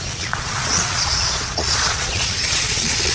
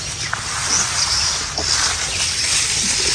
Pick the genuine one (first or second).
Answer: second